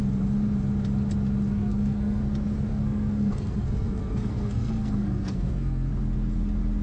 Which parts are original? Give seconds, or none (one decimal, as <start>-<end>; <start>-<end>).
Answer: 0.0-1.5; 2.2-2.7; 5.9-6.8